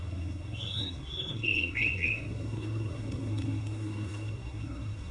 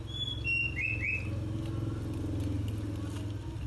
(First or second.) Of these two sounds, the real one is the second